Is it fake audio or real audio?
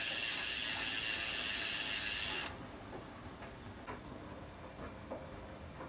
real